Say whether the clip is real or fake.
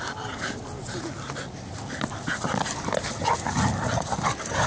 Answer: real